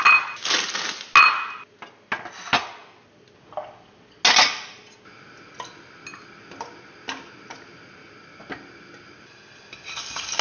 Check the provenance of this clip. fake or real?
real